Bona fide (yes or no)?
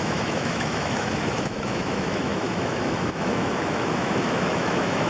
no